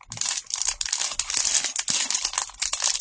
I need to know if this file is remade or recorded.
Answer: recorded